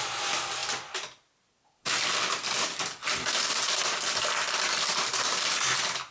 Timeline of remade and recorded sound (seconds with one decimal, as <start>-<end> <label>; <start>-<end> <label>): 0.0-6.1 recorded